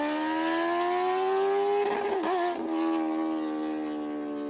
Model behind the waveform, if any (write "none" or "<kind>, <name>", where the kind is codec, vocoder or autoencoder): none